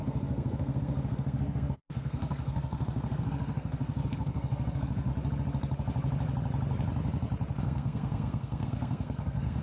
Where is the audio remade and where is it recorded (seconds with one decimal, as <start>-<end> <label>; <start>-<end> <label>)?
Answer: 0.0-5.1 remade; 5.1-7.6 recorded; 7.6-9.6 remade